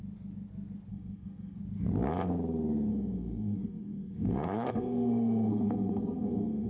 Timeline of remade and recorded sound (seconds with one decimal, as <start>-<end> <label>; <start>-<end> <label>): 0.0-0.9 recorded; 0.9-1.6 remade; 1.6-2.9 recorded; 2.9-6.7 remade